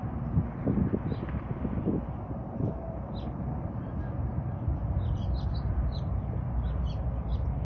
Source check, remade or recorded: recorded